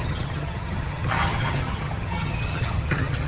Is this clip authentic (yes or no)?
no